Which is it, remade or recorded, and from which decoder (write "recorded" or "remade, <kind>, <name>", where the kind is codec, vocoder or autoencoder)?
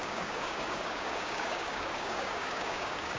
remade, codec, DAC